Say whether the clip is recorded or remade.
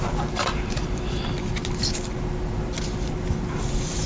recorded